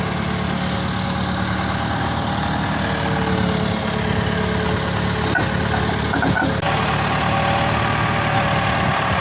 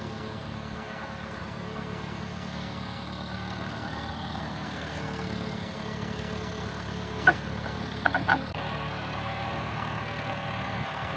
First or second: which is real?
first